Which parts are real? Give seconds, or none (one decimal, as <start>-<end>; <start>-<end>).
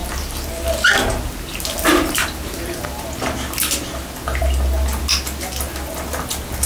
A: 0.5-1.9; 3.0-6.7